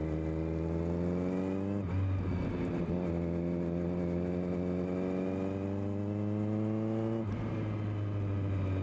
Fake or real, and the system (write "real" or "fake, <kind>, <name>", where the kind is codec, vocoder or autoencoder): real